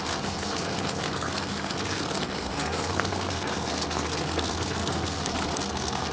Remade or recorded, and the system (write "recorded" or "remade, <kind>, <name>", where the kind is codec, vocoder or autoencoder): remade, codec, SNAC